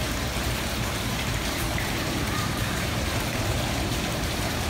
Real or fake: fake